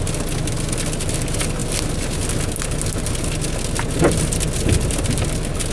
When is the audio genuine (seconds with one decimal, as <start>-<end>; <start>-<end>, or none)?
0.0-5.7